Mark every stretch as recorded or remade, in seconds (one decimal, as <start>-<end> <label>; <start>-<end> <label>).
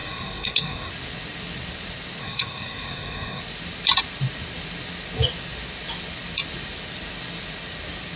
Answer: 0.0-0.9 remade; 0.9-2.2 recorded; 2.2-3.4 remade; 3.4-8.2 recorded